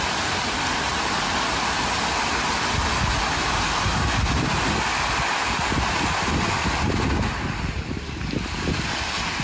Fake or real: real